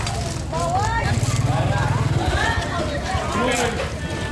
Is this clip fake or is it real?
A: real